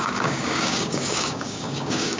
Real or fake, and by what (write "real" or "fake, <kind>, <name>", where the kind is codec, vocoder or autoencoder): fake, codec, DAC